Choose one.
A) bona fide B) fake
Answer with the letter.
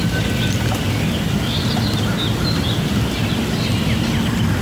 A